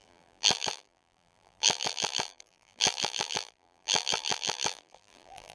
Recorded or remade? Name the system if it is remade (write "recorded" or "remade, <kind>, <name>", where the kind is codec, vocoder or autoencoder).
remade, vocoder, BigVGAN v2